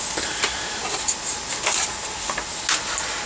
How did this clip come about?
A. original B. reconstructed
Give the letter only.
A